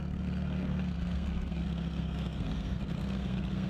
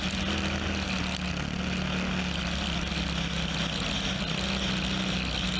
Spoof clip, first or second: first